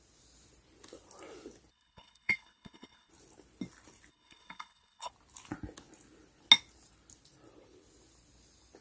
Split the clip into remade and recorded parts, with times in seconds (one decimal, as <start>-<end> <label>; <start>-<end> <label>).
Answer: 0.0-1.7 recorded; 1.7-3.1 remade; 3.1-4.1 recorded; 4.1-5.1 remade; 5.1-8.8 recorded